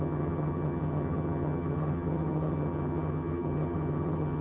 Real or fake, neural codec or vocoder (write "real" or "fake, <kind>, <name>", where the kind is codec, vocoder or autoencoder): fake, vocoder, HiFi-GAN